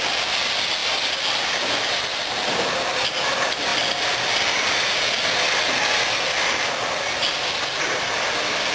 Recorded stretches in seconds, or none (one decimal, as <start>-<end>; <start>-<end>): 0.0-8.7